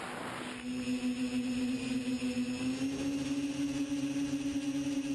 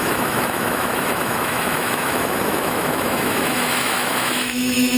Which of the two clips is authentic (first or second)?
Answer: first